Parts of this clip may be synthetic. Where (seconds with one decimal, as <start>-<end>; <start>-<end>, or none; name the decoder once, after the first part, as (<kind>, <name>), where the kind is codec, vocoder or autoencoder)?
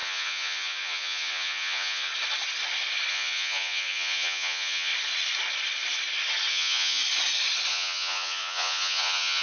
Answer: 0.0-2.1 (vocoder, Vocos); 3.1-4.9; 6.5-7.0; 7.7-9.4